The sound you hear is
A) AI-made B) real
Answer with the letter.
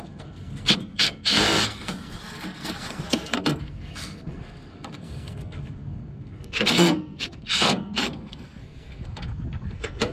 A